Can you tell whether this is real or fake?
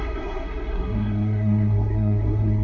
fake